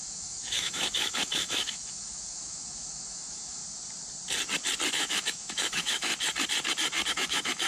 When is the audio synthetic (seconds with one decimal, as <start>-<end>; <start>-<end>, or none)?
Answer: 0.0-3.6; 4.9-6.1; 7.1-7.7